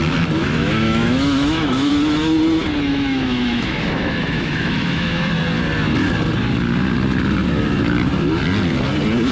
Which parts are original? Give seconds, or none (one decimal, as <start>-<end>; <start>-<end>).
0.0-0.4; 1.9-2.9; 5.3-9.3